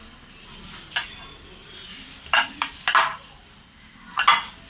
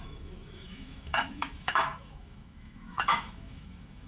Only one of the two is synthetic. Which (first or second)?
second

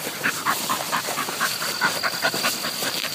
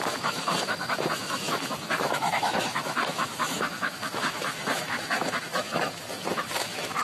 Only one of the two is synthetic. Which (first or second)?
second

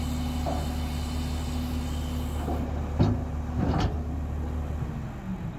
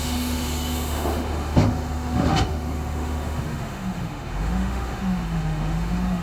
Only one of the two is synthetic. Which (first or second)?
second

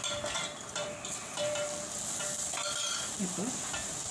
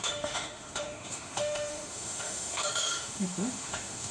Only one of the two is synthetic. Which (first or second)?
second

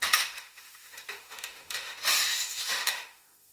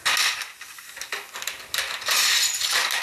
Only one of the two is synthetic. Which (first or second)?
first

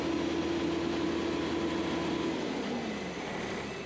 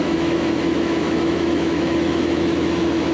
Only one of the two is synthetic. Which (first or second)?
second